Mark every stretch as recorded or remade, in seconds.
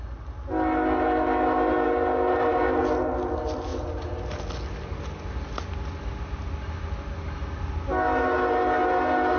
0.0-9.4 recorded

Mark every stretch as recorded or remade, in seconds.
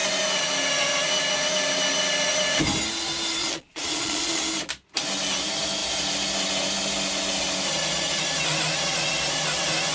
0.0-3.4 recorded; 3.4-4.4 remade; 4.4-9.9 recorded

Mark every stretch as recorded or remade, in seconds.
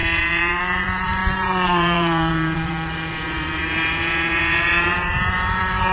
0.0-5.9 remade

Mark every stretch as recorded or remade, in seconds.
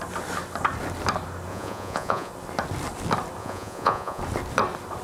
0.0-1.5 recorded; 1.5-2.3 remade; 2.3-3.4 recorded; 3.4-4.2 remade; 4.2-5.0 recorded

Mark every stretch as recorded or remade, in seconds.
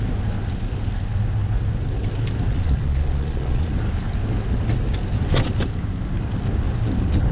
0.0-2.5 recorded; 2.5-3.7 remade; 3.7-7.3 recorded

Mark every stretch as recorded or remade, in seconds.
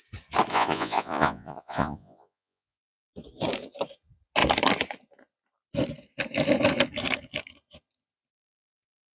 0.0-0.5 recorded; 0.5-3.0 remade; 3.0-9.2 recorded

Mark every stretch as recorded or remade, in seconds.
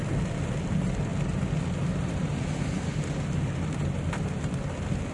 0.0-5.1 recorded